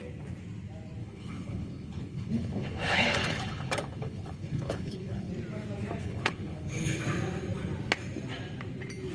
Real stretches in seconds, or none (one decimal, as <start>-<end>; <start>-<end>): 0.0-1.0; 5.3-6.0; 7.0-9.1